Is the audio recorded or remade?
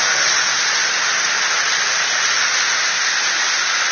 recorded